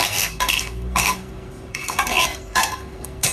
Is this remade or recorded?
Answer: remade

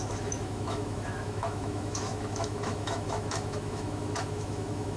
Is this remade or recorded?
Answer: remade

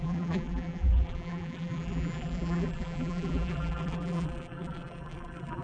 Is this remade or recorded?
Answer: remade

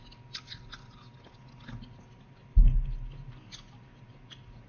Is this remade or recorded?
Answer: recorded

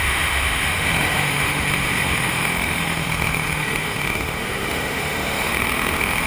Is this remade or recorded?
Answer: remade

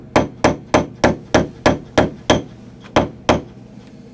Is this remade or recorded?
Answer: recorded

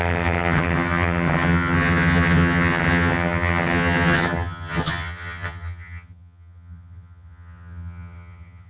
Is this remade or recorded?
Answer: remade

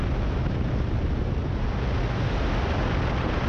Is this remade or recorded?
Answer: recorded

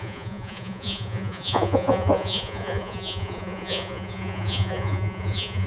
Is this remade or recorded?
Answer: remade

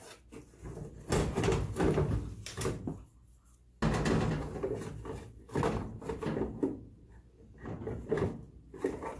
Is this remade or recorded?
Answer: recorded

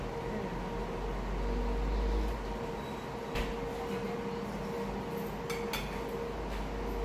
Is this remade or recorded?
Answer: recorded